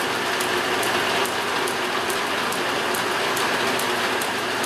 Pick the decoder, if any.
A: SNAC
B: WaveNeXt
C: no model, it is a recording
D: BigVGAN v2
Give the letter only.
C